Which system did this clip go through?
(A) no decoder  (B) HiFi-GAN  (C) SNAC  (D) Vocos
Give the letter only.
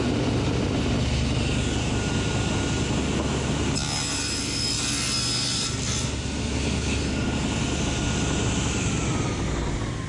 A